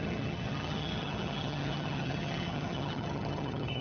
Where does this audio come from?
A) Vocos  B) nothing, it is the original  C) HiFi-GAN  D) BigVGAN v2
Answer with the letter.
C